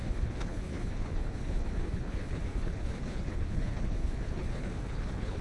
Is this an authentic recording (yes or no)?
no